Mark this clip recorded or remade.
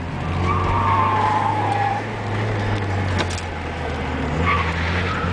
recorded